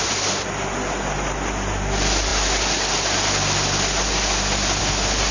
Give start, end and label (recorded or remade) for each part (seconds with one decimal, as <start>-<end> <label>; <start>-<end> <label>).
0.0-5.3 recorded